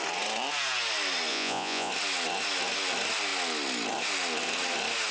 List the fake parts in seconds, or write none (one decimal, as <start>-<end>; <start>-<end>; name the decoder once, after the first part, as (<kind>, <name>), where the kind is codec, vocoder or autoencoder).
1.3-1.9 (vocoder, Vocos)